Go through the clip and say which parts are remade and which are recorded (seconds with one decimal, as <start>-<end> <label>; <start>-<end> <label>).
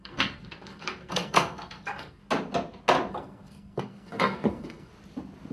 0.0-2.2 remade; 2.2-3.1 recorded; 3.1-4.9 remade; 4.9-5.5 recorded